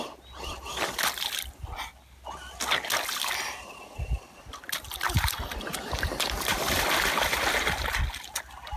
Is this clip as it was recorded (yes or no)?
yes